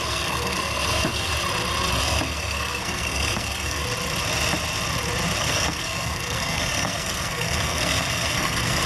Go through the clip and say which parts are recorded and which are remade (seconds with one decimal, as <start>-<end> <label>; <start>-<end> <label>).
0.0-1.3 remade; 1.3-2.0 recorded; 2.0-3.8 remade; 3.8-5.4 recorded; 5.4-8.9 remade